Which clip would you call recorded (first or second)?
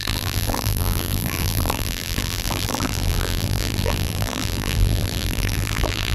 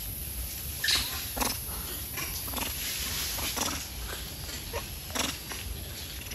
second